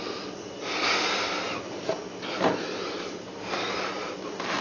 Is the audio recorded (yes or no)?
yes